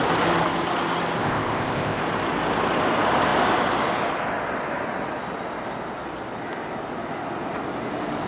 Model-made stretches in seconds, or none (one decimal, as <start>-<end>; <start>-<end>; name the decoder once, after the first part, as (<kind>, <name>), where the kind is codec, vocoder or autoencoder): 1.2-2.0 (codec, ZipCodec)